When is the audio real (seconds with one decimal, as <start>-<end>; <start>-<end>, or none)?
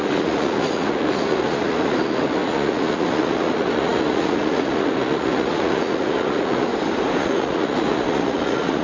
6.7-7.2